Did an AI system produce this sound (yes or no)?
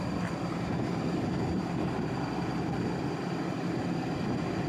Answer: no